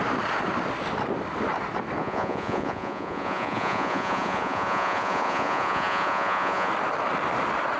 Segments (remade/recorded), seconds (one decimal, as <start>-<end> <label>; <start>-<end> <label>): 0.0-2.0 recorded; 2.0-6.7 remade; 6.7-7.8 recorded